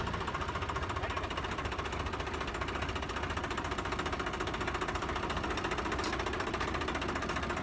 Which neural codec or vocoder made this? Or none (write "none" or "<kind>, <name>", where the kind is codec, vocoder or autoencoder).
none